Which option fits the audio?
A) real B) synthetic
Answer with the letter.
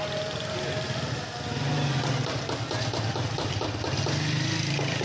A